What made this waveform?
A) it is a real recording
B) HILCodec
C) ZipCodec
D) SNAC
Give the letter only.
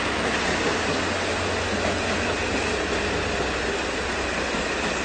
A